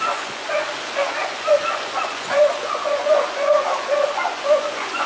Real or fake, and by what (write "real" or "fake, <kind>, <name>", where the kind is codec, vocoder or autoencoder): fake, vocoder, Vocos